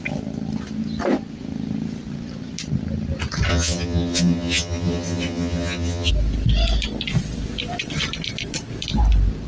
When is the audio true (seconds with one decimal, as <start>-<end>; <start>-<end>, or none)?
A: 0.0-3.5; 6.1-9.5

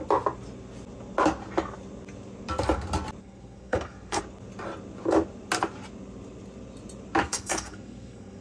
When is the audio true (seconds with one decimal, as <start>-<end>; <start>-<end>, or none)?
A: 0.0-3.2; 4.2-7.2

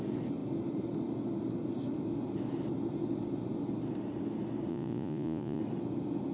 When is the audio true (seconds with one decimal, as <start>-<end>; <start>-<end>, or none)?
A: 0.0-4.7; 5.6-6.3

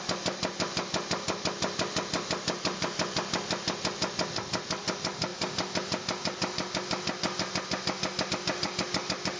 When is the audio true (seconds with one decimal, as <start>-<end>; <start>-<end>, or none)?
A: 0.0-9.4